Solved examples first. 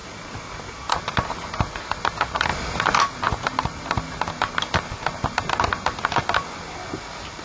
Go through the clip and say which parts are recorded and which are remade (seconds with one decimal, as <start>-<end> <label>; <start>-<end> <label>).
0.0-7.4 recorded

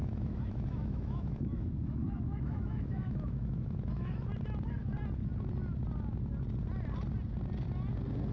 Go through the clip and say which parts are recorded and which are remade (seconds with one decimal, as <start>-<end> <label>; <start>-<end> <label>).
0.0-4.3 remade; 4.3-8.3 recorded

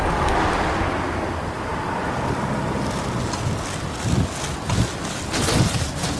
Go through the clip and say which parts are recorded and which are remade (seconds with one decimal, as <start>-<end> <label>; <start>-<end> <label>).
0.0-6.2 recorded

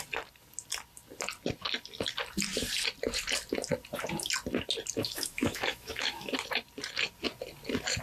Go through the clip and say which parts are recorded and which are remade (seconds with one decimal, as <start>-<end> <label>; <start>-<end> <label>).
0.0-5.0 recorded; 5.0-6.3 remade; 6.3-8.0 recorded

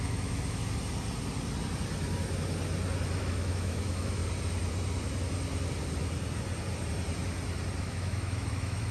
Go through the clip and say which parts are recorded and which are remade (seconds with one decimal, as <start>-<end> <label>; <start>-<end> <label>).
0.0-0.6 remade; 0.6-3.2 recorded; 3.2-4.2 remade; 4.2-7.8 recorded; 7.8-8.9 remade